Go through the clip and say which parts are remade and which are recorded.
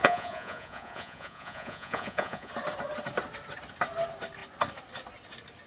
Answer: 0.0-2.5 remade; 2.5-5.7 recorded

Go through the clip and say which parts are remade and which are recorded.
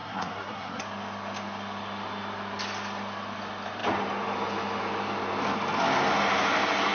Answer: 0.0-0.8 remade; 0.8-6.9 recorded